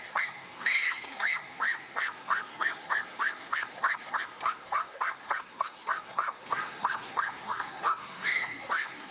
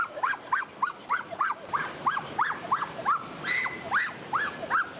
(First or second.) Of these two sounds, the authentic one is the second